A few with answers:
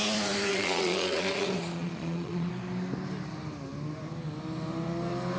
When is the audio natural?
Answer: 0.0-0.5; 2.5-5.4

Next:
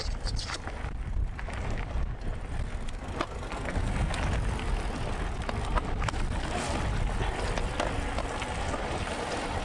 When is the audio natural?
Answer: 0.0-3.5; 4.1-9.6

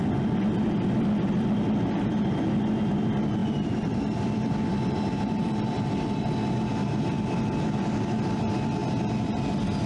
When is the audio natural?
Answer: 0.0-3.4; 6.2-9.9

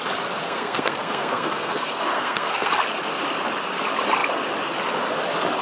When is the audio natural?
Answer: 0.0-0.4; 2.7-5.6